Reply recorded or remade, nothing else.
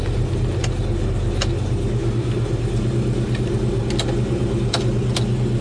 recorded